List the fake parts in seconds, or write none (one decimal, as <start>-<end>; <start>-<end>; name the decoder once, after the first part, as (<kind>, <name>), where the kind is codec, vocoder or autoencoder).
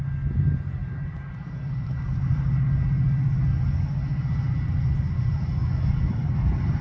0.8-2.5 (vocoder, BigVGAN v2)